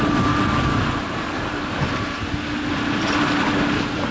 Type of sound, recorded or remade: recorded